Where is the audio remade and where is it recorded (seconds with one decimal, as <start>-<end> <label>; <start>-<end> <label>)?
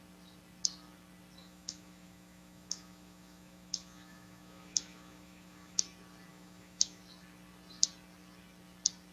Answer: 0.0-1.4 recorded; 1.4-5.8 remade; 5.8-6.3 recorded; 6.3-7.0 remade; 7.0-9.1 recorded